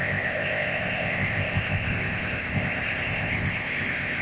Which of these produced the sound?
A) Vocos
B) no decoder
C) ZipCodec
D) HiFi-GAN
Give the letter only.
C